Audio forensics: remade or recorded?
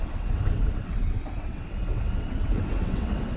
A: remade